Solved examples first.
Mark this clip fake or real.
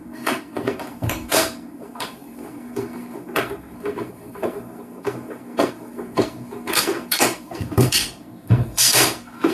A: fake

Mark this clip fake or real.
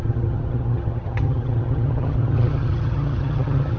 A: fake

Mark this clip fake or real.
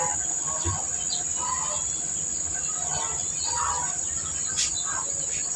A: real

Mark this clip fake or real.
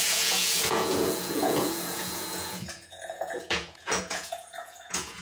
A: fake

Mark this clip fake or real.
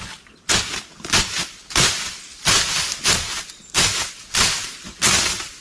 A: real